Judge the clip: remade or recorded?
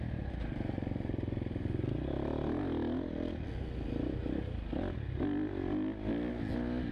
recorded